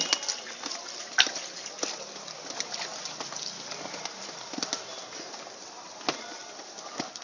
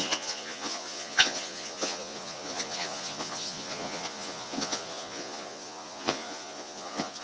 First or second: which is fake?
second